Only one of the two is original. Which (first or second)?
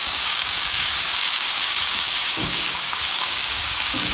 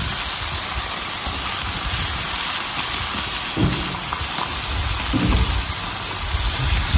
second